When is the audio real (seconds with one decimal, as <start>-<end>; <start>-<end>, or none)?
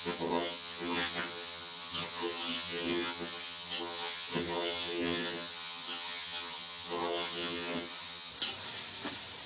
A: 8.3-9.5